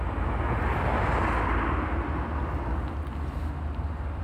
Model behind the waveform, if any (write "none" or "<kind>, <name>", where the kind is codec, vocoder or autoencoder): none